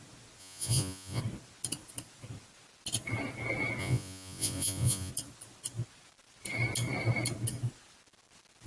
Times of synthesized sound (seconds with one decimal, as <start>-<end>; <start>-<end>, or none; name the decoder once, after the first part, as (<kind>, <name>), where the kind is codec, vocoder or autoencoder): 0.4-1.2 (vocoder, Vocos); 3.8-5.1